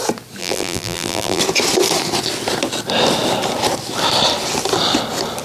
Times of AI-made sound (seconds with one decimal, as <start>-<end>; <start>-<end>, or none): 0.4-1.4